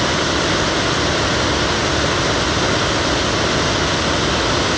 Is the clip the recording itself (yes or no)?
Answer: yes